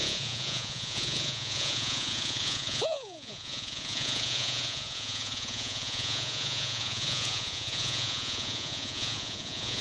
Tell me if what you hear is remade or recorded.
remade